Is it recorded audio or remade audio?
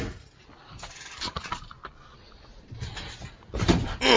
recorded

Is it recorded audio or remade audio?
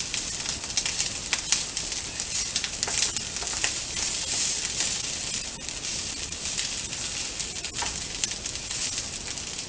recorded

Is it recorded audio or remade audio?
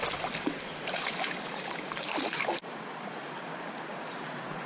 recorded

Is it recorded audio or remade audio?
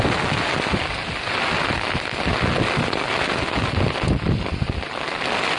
recorded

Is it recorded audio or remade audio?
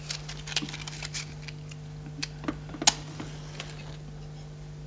recorded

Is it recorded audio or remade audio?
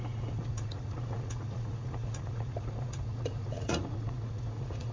remade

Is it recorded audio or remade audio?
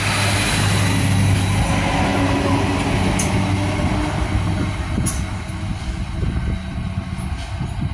recorded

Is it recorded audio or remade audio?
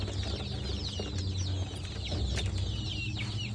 recorded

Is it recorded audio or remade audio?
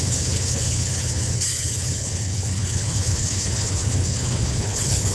remade